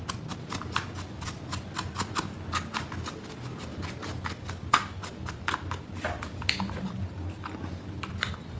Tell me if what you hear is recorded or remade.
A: recorded